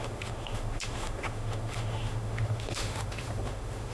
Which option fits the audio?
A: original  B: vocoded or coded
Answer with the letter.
B